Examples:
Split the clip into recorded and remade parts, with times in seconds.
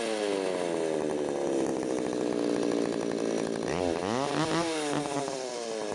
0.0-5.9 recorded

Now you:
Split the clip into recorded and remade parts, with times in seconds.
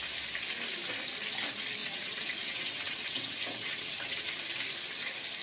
0.0-1.8 recorded; 1.8-4.3 remade; 4.3-5.4 recorded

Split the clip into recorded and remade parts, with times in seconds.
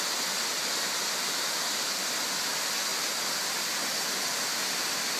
0.0-5.2 recorded